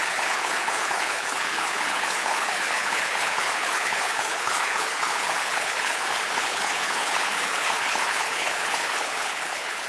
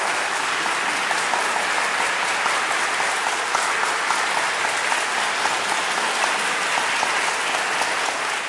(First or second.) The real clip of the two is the second